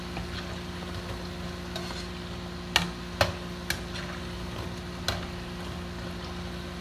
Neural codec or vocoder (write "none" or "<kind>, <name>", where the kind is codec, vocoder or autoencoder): none